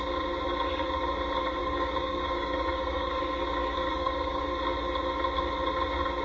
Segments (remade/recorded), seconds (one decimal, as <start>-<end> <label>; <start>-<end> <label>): 0.0-1.6 recorded; 1.6-3.2 remade; 3.2-3.6 recorded; 3.6-4.5 remade; 4.5-6.2 recorded